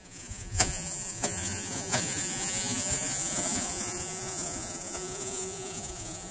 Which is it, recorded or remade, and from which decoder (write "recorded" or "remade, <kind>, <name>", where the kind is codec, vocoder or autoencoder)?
remade, vocoder, Vocos